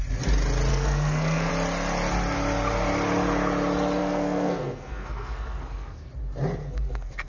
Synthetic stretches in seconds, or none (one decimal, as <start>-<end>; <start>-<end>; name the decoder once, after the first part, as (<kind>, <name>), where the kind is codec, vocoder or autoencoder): 0.7-1.5 (codec, SNAC); 4.0-6.1; 6.6-7.3